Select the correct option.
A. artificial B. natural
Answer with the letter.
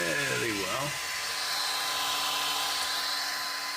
B